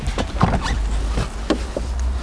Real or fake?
real